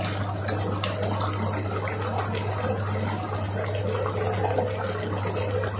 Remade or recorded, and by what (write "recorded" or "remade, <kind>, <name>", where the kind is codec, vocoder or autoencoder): recorded